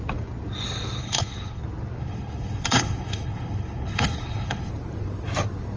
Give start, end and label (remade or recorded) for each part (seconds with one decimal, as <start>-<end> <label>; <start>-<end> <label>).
0.0-1.0 recorded; 1.0-1.6 remade; 1.6-2.0 recorded; 2.0-4.7 remade; 4.7-5.8 recorded